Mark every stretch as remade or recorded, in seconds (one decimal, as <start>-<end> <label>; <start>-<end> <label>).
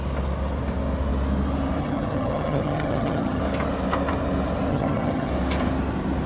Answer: 0.0-1.8 recorded; 1.8-3.4 remade; 3.4-4.7 recorded; 4.7-5.3 remade; 5.3-6.3 recorded